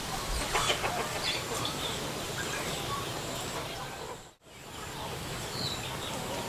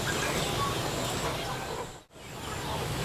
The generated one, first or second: first